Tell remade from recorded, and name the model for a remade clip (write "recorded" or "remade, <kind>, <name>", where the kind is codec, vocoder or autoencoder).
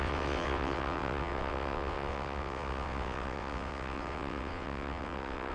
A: remade, vocoder, WaveNeXt